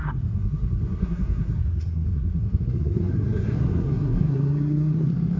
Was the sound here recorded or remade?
remade